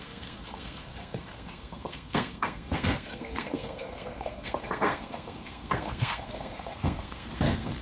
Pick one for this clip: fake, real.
fake